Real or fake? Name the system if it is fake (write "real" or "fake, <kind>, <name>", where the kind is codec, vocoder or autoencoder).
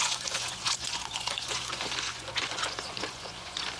fake, vocoder, Vocos